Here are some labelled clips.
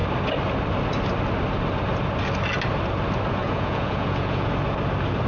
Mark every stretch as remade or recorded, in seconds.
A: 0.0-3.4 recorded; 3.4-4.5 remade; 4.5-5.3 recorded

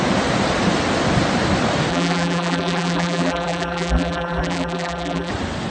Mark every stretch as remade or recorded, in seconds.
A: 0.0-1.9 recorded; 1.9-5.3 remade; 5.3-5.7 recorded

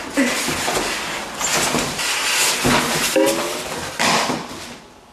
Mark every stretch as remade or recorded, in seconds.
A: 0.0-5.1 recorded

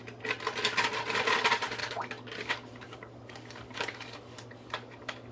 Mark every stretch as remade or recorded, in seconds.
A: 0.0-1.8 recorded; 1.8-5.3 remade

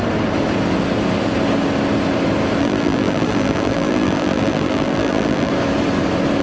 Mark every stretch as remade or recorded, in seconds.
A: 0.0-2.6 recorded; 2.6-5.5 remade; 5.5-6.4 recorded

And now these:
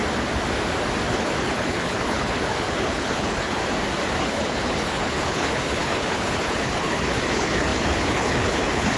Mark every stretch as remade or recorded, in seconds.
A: 0.0-1.1 recorded; 1.1-3.6 remade; 3.6-4.2 recorded; 4.2-9.0 remade

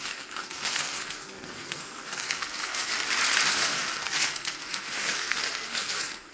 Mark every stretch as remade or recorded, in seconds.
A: 0.0-2.9 remade; 2.9-3.5 recorded; 3.5-6.3 remade